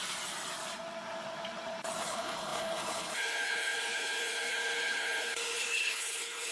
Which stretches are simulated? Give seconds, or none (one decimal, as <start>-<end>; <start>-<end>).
2.0-6.5